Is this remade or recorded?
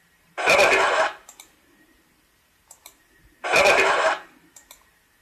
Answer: remade